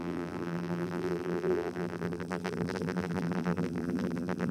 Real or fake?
fake